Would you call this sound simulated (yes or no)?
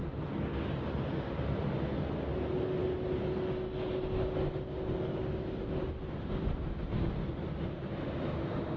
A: no